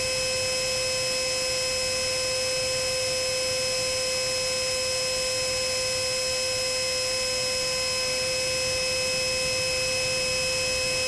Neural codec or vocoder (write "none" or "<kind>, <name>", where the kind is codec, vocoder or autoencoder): none